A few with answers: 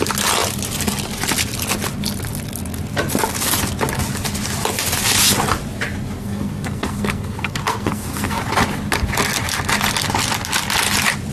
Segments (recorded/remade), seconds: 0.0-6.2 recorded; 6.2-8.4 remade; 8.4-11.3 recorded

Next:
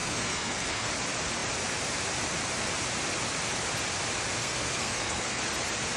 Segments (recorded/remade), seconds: 0.0-0.9 remade; 0.9-4.4 recorded; 4.4-5.4 remade; 5.4-6.0 recorded